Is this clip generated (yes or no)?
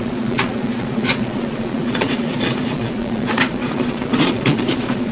yes